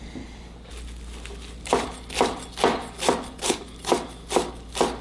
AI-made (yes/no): no